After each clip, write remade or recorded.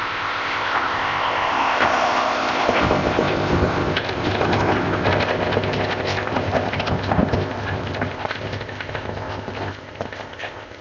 remade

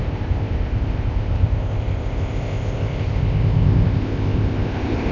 remade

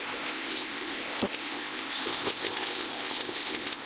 remade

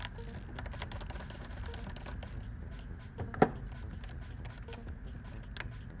recorded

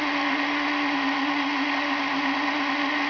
recorded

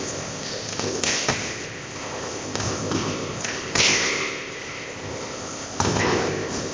remade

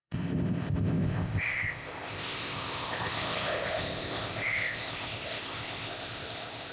remade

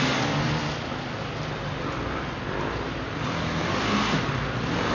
recorded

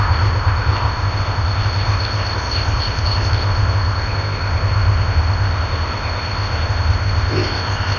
remade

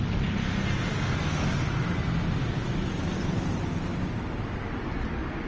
recorded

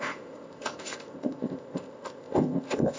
remade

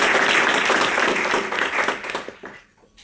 recorded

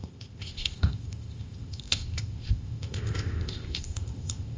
remade